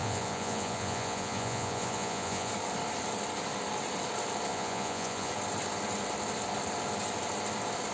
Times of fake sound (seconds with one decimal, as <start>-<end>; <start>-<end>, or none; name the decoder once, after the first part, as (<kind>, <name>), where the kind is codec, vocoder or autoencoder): 0.0-2.5 (vocoder, Vocos); 4.5-5.3